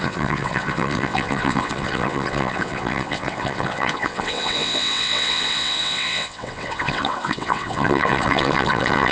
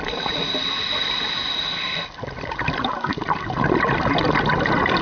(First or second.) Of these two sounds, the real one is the second